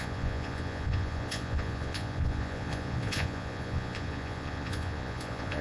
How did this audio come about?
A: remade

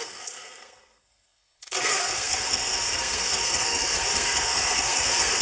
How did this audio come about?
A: remade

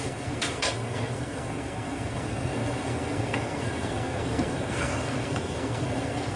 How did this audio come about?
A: remade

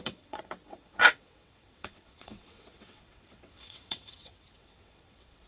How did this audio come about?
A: remade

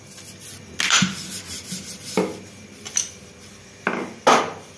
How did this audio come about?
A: recorded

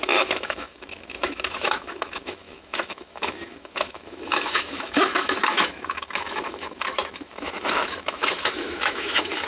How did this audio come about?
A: remade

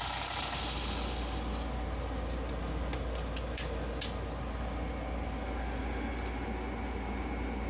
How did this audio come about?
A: recorded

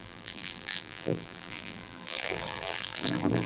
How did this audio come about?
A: remade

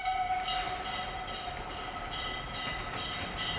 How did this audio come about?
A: recorded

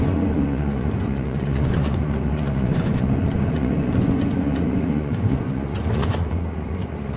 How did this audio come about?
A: remade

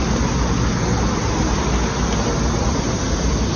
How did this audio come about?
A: recorded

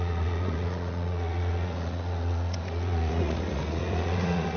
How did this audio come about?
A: remade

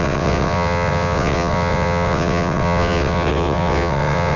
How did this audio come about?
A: remade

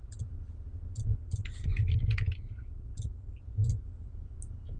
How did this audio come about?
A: recorded